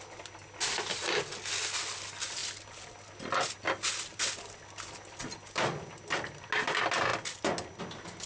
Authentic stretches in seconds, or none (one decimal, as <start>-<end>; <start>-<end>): 0.0-8.3